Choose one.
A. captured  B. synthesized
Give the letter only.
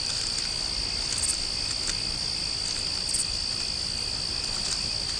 A